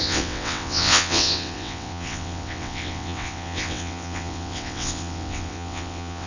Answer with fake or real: fake